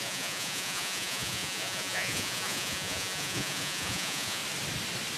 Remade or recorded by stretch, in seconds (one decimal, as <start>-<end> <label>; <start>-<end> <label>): 0.0-4.4 remade; 4.4-5.2 recorded